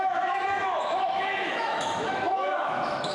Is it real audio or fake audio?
fake